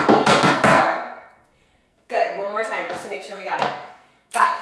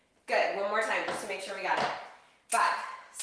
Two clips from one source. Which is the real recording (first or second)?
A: second